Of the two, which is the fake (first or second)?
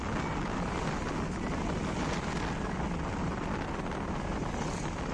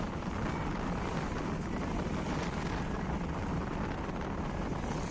second